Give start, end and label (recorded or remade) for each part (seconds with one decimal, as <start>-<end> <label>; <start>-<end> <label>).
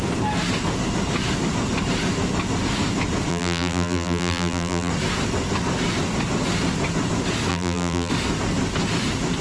0.0-3.3 recorded; 3.3-4.9 remade; 4.9-7.5 recorded; 7.5-8.1 remade; 8.1-9.4 recorded